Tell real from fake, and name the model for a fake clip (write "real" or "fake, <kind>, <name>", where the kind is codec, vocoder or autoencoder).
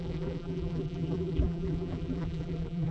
fake, vocoder, BigVGAN v2